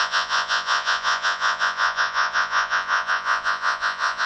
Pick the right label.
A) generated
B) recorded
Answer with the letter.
A